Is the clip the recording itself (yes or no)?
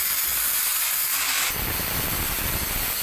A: no